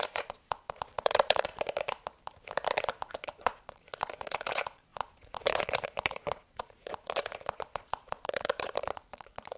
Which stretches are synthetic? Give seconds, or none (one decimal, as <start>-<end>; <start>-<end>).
0.0-1.5; 3.1-9.6